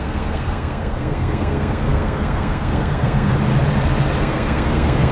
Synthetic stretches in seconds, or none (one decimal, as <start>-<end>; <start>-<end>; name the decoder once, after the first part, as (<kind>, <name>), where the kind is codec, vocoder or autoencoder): 0.0-3.3 (codec, SNAC); 4.2-5.1

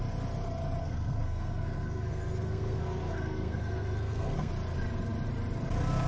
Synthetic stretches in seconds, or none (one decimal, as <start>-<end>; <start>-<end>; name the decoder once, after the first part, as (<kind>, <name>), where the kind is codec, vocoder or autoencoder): 0.8-4.5 (codec, SNAC)